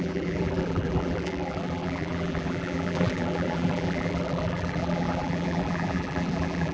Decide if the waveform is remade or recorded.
remade